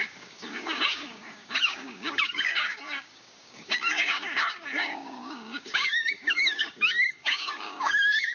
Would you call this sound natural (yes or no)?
no